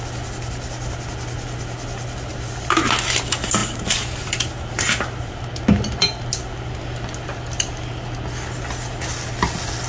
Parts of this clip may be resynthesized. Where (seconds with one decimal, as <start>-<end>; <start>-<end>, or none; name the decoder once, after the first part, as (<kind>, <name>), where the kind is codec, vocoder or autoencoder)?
3.6-5.4 (vocoder, BigVGAN v2)